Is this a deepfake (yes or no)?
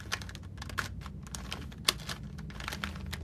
no